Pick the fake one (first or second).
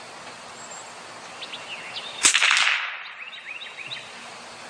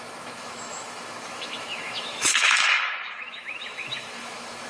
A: second